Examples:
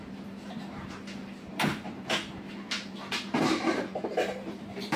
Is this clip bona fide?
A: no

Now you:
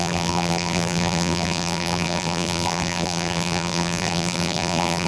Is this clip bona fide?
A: no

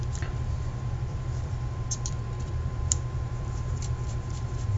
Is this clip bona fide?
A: no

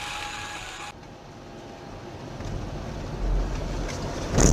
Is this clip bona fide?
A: yes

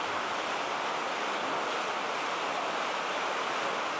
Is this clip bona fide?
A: no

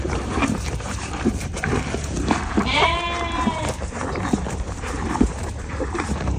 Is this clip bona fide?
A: no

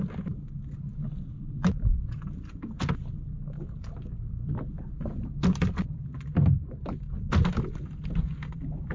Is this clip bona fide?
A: yes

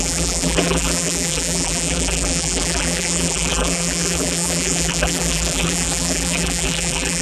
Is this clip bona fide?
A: no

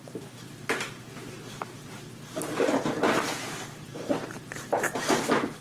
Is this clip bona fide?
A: no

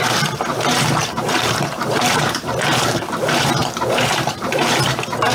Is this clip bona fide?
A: no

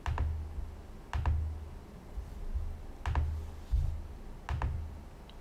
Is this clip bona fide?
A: yes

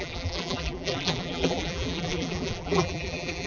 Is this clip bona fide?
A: no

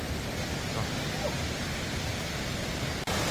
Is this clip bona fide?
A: yes